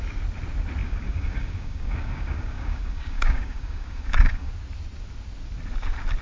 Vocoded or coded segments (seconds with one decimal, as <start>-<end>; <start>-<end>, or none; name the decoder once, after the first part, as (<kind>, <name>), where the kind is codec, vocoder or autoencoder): 0.8-4.5 (codec, DAC)